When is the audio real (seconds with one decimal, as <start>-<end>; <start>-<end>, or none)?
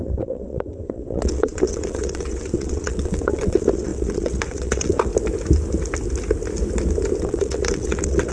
5.1-7.2